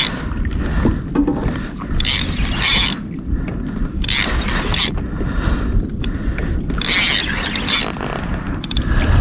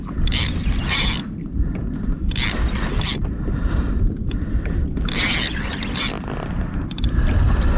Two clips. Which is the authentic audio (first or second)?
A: first